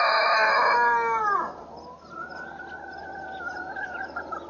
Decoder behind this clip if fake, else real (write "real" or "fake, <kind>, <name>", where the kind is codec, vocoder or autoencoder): real